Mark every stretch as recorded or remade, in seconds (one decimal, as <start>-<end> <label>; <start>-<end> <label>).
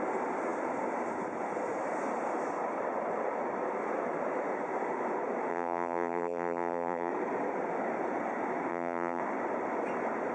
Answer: 0.0-5.5 recorded; 5.5-7.1 remade; 7.1-8.7 recorded; 8.7-9.2 remade; 9.2-10.3 recorded